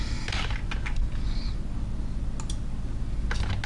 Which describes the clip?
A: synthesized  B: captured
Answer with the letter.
B